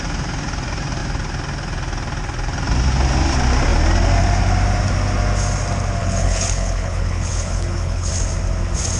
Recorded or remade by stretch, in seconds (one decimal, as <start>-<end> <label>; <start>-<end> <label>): 0.0-6.0 recorded; 6.0-8.1 remade; 8.1-9.0 recorded